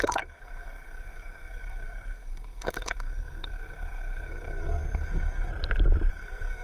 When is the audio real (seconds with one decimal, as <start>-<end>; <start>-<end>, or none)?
5.5-6.1